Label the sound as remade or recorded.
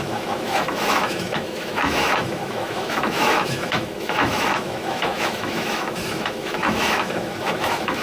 remade